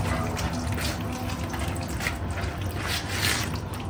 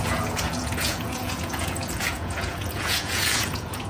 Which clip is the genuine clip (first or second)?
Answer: first